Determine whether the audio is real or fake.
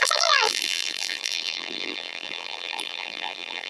fake